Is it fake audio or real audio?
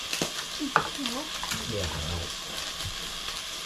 real